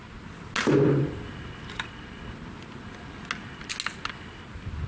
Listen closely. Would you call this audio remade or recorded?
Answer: recorded